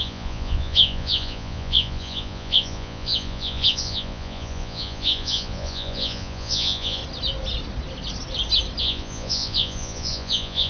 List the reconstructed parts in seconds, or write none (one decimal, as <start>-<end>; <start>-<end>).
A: 0.0-7.0; 8.8-10.7